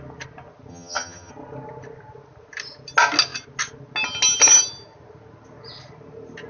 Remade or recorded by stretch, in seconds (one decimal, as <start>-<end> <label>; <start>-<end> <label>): 0.0-0.7 recorded; 0.7-1.3 remade; 1.3-6.5 recorded